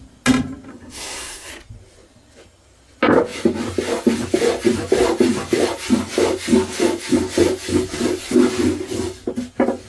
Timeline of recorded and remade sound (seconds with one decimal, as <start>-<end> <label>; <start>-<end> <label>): 0.0-0.7 recorded; 0.7-1.5 remade; 1.5-9.9 recorded